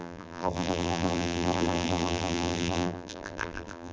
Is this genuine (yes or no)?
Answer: no